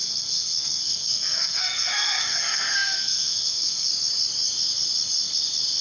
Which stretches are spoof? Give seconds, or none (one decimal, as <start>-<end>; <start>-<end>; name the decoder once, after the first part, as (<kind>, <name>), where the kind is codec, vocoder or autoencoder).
0.0-3.9 (codec, SNAC)